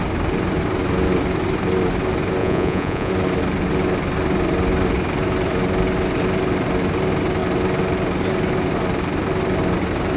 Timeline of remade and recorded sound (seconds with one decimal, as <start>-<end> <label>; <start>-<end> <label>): 0.0-2.4 recorded; 2.4-3.1 remade; 3.1-10.2 recorded